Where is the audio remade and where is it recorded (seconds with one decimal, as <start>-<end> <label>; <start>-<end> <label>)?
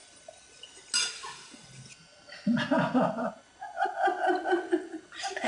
0.0-5.5 recorded